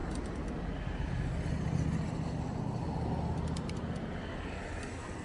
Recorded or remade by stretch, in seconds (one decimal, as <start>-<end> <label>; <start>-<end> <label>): 0.0-5.2 recorded